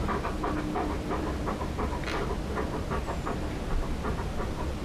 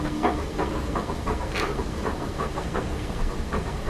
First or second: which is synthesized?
second